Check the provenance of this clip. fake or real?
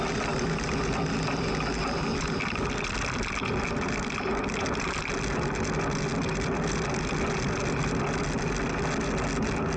real